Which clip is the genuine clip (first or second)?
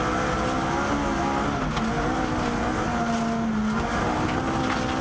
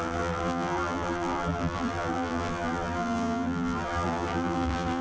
first